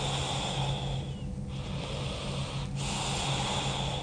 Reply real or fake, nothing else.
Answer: real